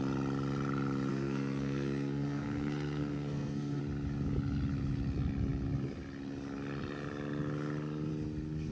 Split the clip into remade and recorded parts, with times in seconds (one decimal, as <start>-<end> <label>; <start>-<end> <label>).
0.0-1.1 recorded; 1.1-3.8 remade; 3.8-8.7 recorded